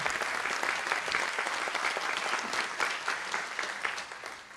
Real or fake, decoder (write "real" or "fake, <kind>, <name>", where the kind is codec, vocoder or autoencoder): real